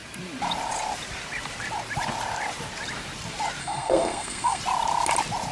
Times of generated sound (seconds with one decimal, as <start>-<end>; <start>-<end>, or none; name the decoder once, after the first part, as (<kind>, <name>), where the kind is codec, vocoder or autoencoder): 3.6-4.6 (codec, SNAC)